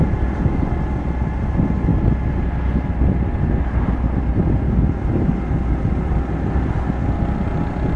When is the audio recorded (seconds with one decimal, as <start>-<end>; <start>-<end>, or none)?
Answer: 0.0-8.0